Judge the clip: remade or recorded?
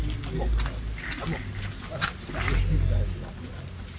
recorded